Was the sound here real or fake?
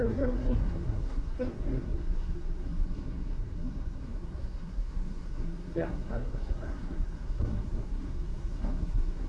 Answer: fake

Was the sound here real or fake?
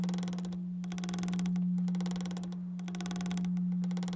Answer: real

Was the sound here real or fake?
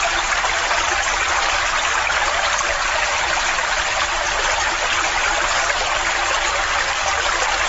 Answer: real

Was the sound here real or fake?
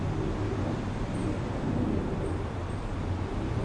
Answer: real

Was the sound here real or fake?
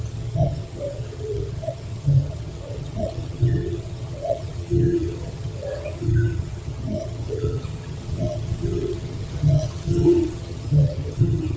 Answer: fake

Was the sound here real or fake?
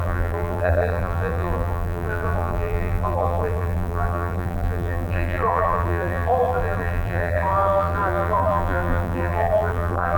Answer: fake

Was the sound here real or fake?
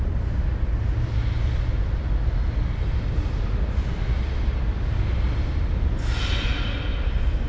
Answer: real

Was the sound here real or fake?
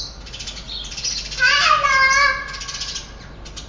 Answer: real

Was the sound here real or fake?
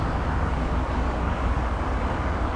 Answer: fake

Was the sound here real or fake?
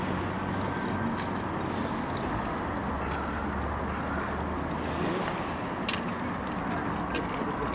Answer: real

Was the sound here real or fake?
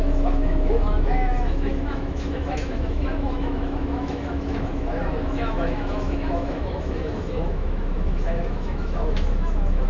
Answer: fake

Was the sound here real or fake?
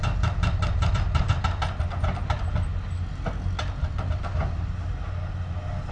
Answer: real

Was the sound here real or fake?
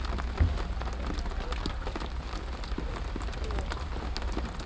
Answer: real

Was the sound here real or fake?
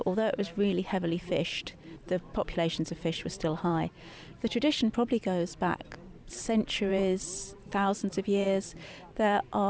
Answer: fake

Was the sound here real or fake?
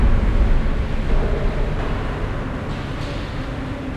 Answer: real